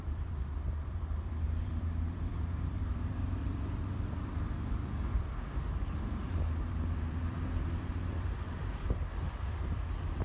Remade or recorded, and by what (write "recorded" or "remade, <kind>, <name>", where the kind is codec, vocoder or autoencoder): remade, vocoder, BigVGAN v2